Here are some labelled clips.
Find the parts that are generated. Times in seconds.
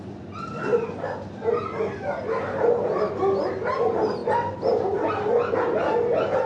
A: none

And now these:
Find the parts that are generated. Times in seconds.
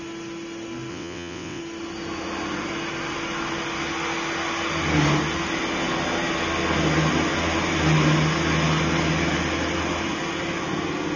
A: 0.9-1.6 (vocoder, WaveNeXt)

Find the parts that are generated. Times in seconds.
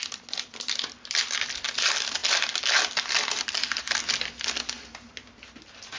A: none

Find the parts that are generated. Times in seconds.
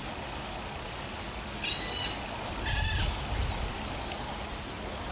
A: none